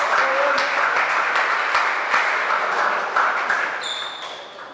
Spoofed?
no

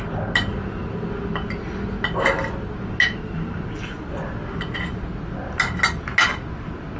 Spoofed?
no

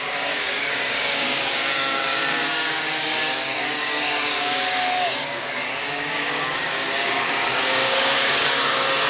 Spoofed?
yes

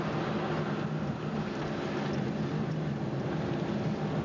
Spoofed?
no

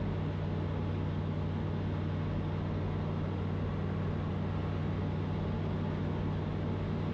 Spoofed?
no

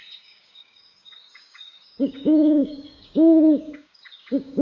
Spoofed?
yes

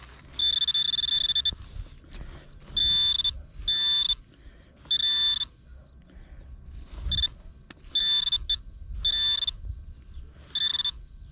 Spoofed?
no